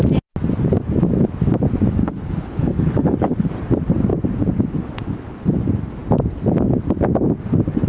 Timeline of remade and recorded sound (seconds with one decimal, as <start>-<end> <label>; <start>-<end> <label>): 0.0-2.0 recorded; 2.0-3.5 remade; 3.5-7.9 recorded